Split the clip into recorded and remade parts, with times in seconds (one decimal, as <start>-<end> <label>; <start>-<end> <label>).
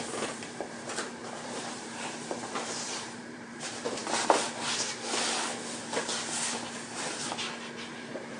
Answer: 0.0-4.0 remade; 4.0-7.9 recorded; 7.9-8.4 remade